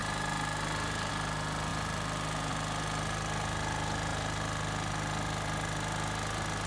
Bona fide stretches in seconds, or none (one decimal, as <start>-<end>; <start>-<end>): 0.0-6.7